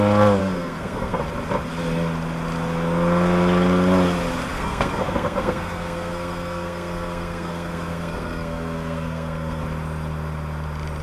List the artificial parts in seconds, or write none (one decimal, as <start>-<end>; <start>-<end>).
0.4-1.2; 4.5-9.6